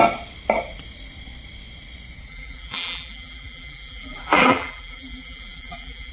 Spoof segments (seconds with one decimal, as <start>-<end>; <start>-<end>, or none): 2.3-6.1